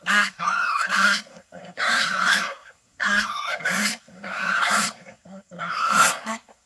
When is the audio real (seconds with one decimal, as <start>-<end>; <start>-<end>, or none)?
none